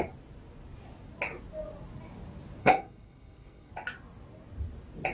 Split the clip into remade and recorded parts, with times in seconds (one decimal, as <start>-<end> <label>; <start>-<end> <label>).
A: 0.0-2.6 recorded; 2.6-3.7 remade; 3.7-5.1 recorded

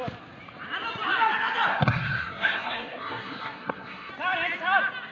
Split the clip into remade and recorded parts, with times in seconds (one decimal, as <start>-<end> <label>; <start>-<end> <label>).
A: 0.0-1.7 recorded; 1.7-4.1 remade; 4.1-5.1 recorded